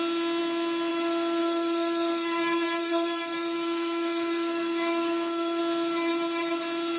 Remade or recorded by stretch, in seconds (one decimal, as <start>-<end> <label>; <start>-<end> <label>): 0.0-1.4 recorded; 1.4-5.6 remade; 5.6-7.0 recorded